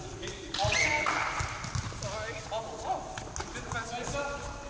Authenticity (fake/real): real